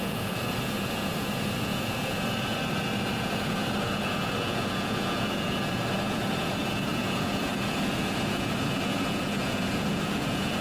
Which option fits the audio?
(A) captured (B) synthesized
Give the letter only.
B